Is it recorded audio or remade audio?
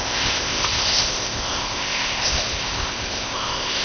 remade